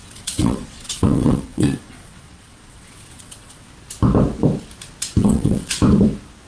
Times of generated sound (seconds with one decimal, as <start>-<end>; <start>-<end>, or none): 0.0-3.7; 5.2-5.7